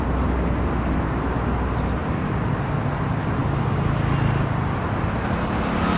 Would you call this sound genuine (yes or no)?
yes